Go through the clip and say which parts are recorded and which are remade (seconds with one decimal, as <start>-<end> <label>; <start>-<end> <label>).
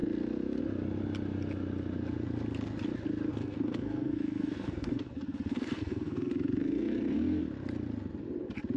0.0-3.3 recorded; 3.3-7.4 remade; 7.4-8.8 recorded